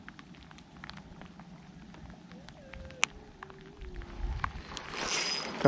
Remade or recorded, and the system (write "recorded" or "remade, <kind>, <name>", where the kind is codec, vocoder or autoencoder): recorded